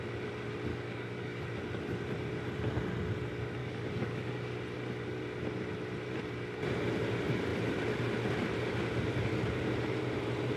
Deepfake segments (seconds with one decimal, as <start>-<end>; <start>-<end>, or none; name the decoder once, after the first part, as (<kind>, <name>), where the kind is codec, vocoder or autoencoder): 0.7-1.4 (codec, DAC); 3.6-4.3